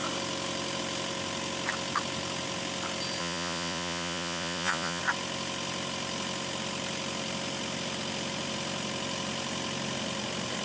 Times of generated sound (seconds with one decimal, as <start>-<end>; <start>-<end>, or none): 3.2-5.0